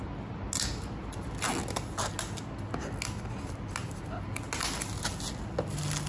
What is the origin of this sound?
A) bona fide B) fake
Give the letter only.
A